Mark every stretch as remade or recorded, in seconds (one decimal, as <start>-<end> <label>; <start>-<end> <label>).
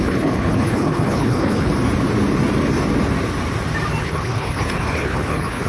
0.0-1.7 remade; 1.7-4.0 recorded; 4.0-5.7 remade